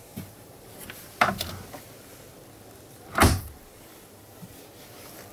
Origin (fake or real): real